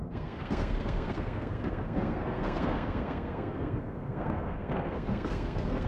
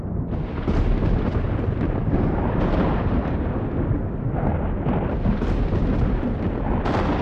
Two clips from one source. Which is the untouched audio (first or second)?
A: second